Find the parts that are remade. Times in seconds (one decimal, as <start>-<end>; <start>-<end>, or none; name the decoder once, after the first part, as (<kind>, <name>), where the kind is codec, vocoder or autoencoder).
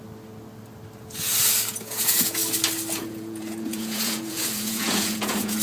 1.7-2.4 (vocoder, Vocos); 3.0-5.6